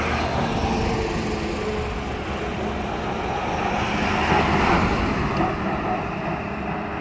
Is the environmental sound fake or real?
real